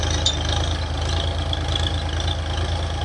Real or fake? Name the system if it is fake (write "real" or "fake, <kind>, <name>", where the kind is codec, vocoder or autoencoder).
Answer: real